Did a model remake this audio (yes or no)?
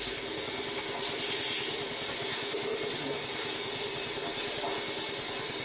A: no